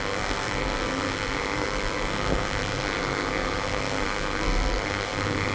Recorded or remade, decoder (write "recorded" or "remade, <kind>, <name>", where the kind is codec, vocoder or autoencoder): remade, codec, SNAC